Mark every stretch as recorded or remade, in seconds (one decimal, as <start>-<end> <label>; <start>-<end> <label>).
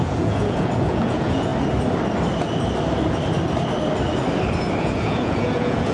0.0-1.5 remade; 1.5-4.8 recorded; 4.8-5.9 remade